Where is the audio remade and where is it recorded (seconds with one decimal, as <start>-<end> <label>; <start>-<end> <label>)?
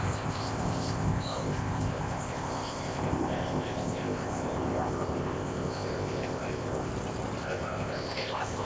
0.0-6.9 remade; 6.9-7.4 recorded; 7.4-8.6 remade